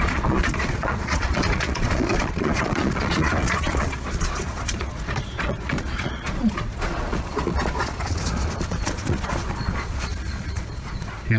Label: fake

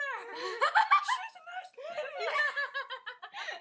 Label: real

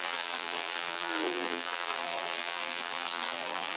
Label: fake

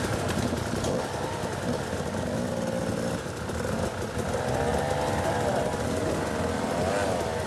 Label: real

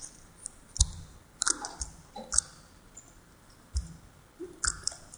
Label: real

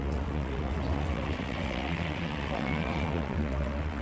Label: fake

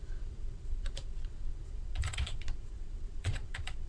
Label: fake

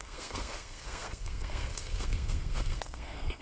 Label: fake